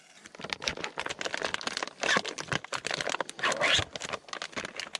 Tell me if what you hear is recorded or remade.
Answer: recorded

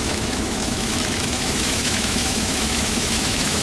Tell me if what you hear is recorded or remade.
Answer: remade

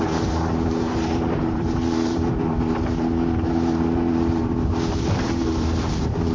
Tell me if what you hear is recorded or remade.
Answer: remade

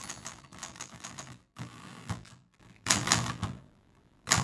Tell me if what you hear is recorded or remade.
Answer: remade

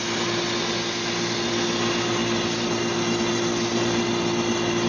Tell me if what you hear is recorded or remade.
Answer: recorded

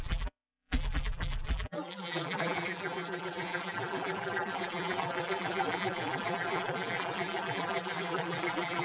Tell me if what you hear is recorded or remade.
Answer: remade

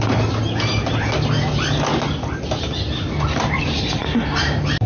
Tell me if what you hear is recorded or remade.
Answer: recorded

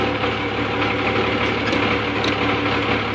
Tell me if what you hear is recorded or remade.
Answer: recorded